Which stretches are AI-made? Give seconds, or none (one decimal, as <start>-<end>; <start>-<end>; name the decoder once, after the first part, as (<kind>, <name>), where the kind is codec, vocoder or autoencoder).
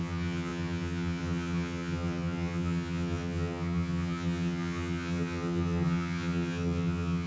0.0-7.3 (vocoder, HiFi-GAN)